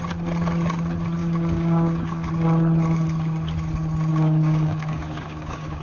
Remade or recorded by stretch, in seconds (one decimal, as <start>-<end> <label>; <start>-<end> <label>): 0.0-1.2 recorded; 1.2-2.3 remade; 2.3-4.1 recorded; 4.1-5.8 remade